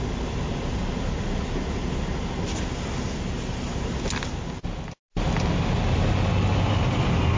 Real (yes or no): yes